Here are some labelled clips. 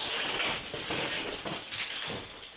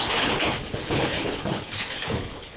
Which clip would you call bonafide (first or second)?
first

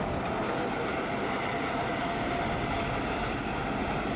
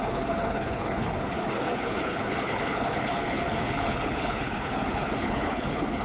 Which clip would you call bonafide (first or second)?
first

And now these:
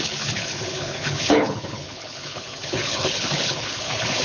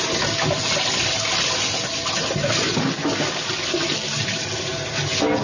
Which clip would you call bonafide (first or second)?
second